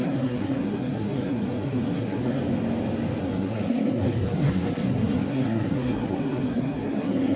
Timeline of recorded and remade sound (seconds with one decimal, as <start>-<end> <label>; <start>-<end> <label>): 0.0-2.4 remade; 2.4-3.2 recorded; 3.2-7.4 remade